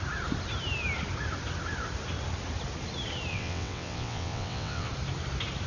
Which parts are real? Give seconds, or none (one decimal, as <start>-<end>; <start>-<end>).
0.0-3.3; 4.9-5.7